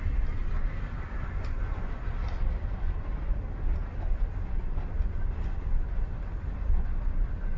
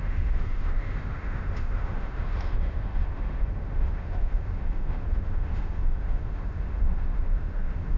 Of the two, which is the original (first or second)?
first